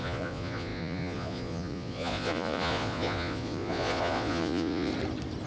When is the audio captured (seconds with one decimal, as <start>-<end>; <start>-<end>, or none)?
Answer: 4.9-5.5